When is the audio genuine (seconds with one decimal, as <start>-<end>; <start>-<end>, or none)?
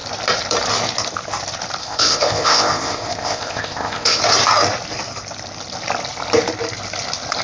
0.0-1.8; 4.2-7.4